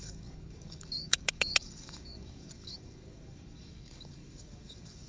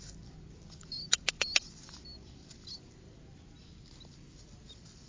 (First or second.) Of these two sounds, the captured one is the second